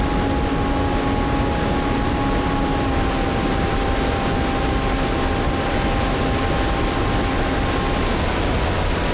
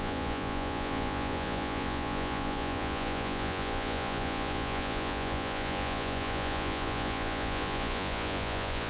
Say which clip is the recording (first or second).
first